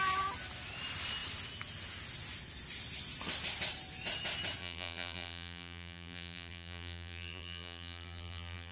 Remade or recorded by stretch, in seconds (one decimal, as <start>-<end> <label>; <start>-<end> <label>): 0.0-4.6 recorded; 4.6-8.7 remade